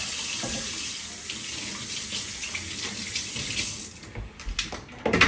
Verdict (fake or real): real